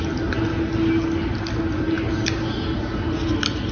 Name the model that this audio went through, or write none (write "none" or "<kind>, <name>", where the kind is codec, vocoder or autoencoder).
none